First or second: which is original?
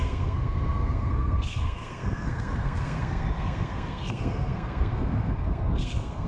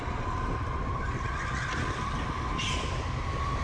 second